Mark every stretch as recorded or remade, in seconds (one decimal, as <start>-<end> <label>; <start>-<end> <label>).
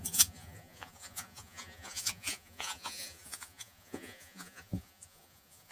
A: 0.0-5.7 remade